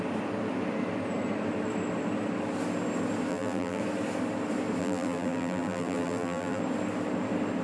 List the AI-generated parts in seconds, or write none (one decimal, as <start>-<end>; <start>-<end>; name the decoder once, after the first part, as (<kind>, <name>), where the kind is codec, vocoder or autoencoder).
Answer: 3.3-3.8 (vocoder, BigVGAN v2); 4.8-6.6